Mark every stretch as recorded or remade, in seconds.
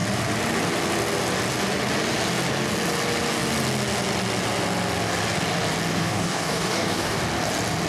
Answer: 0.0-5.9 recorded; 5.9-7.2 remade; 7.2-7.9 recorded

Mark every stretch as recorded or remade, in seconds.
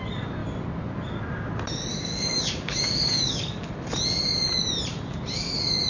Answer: 0.0-1.9 recorded; 1.9-3.7 remade; 3.7-5.9 recorded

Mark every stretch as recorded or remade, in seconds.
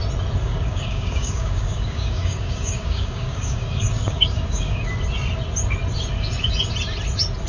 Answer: 0.0-0.4 recorded; 0.4-4.9 remade; 4.9-7.5 recorded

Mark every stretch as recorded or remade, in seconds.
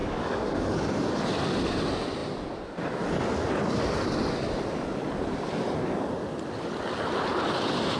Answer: 0.0-0.9 remade; 0.9-8.0 recorded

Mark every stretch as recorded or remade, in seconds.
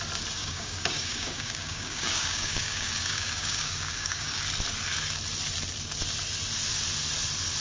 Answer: 0.0-0.4 recorded; 0.4-4.4 remade; 4.4-7.6 recorded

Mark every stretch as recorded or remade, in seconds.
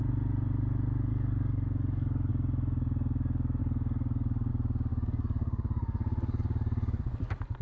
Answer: 0.0-1.1 recorded; 1.1-2.3 remade; 2.3-3.6 recorded; 3.6-4.5 remade; 4.5-4.9 recorded; 4.9-7.6 remade